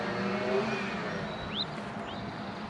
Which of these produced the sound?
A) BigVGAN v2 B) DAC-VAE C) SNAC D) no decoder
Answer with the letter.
D